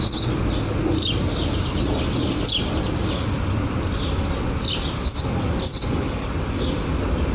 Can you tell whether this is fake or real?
real